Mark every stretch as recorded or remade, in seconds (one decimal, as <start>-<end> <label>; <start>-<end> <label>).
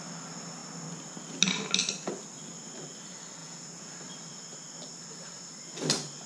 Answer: 0.0-3.4 recorded; 3.4-3.9 remade; 3.9-6.3 recorded